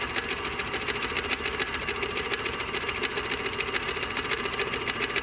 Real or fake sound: real